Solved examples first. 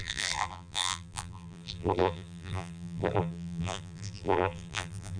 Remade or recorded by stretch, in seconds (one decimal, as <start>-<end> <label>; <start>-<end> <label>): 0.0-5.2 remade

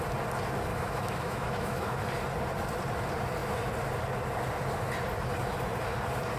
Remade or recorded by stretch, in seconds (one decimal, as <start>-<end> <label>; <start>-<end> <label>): 0.0-0.7 recorded; 0.7-2.0 remade; 2.0-6.4 recorded

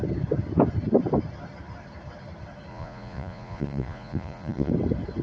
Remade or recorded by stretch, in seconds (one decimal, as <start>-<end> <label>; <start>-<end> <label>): 0.0-2.7 recorded; 2.7-4.7 remade; 4.7-5.2 recorded

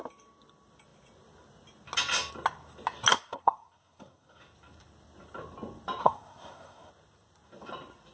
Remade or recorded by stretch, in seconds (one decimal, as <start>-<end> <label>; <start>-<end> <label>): 0.0-3.1 recorded; 3.1-4.4 remade; 4.4-6.0 recorded; 6.0-6.9 remade; 6.9-8.1 recorded

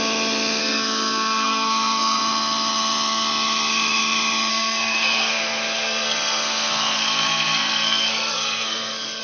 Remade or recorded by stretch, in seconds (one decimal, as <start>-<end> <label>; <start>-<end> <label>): 0.0-0.6 recorded; 0.6-2.2 remade; 2.2-4.5 recorded; 4.5-9.2 remade

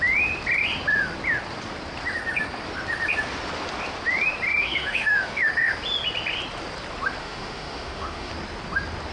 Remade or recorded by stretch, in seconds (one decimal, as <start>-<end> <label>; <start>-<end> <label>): 0.0-4.6 recorded; 4.6-5.7 remade; 5.7-7.2 recorded; 7.2-8.3 remade; 8.3-9.1 recorded

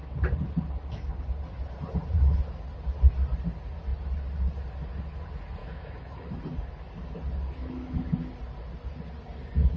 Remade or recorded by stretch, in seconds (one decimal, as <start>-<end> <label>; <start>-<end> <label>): 0.0-5.6 recorded; 5.6-6.4 remade; 6.4-7.6 recorded; 7.6-8.3 remade; 8.3-9.8 recorded

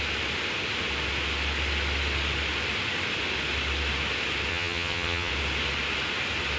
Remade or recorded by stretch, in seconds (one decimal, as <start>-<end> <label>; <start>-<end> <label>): 0.0-4.5 recorded; 4.5-5.3 remade; 5.3-6.6 recorded